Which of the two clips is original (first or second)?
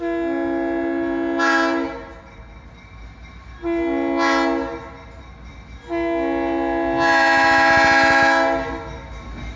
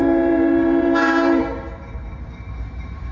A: first